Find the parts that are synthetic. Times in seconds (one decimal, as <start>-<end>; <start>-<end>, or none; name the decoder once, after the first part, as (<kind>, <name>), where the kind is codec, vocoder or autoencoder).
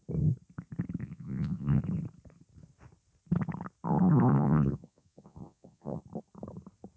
1.0-1.8 (vocoder, Vocos); 4.3-6.0